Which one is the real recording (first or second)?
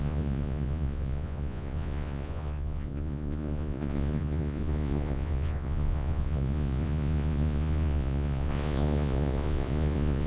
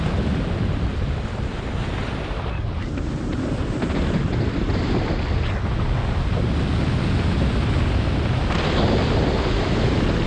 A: second